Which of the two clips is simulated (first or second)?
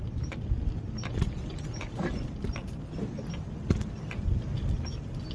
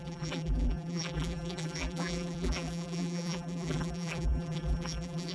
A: second